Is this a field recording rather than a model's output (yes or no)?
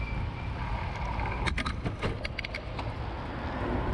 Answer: yes